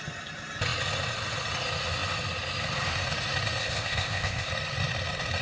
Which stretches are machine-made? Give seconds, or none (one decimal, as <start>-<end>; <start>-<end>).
3.6-4.5